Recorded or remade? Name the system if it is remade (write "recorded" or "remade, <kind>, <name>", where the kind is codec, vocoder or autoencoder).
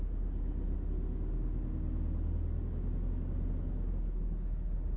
recorded